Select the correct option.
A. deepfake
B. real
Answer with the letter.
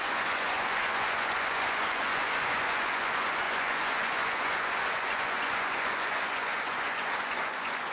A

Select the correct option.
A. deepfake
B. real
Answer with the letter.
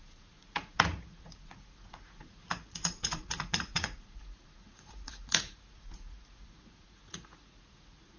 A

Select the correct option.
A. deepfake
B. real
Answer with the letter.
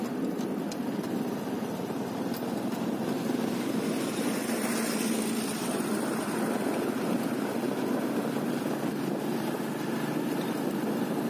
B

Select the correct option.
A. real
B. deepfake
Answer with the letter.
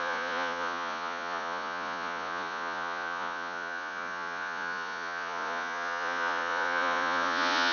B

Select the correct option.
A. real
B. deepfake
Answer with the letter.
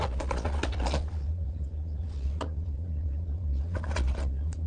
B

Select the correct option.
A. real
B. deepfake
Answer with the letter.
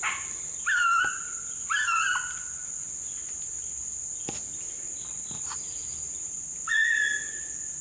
A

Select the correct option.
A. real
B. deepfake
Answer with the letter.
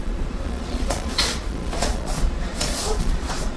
B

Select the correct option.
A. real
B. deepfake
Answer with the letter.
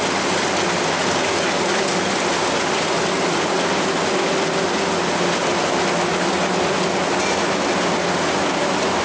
A